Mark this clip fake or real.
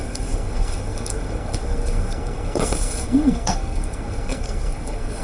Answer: fake